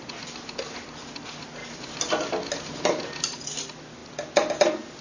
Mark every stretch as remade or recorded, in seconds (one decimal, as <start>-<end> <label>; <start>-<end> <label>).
0.0-5.0 recorded